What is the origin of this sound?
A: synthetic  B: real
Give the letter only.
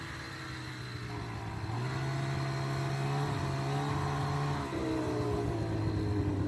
B